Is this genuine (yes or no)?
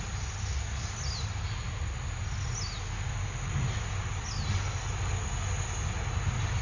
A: yes